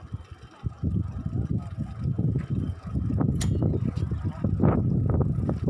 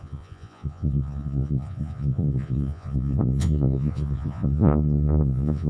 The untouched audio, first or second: first